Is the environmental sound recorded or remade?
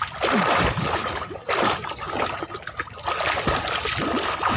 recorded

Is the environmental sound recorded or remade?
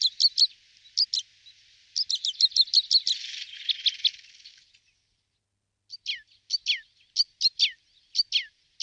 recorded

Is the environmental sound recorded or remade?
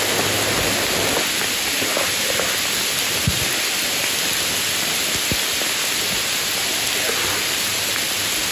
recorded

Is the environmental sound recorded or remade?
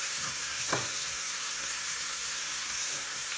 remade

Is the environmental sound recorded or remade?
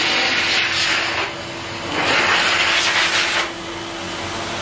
recorded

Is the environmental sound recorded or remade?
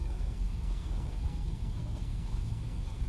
remade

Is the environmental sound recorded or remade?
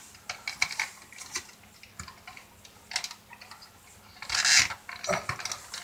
recorded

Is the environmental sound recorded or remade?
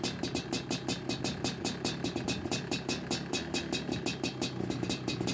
recorded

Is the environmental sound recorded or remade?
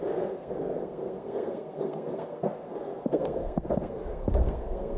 remade